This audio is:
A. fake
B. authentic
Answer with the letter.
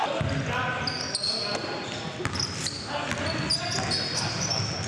B